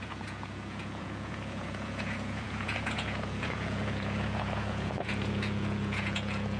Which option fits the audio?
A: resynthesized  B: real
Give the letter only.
A